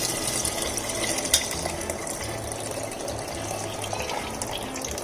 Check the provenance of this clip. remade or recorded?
recorded